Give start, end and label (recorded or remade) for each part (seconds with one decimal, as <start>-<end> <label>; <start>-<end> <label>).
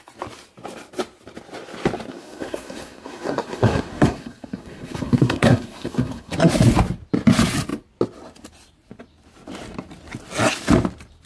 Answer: 0.0-2.1 recorded; 2.1-6.5 remade; 6.5-11.3 recorded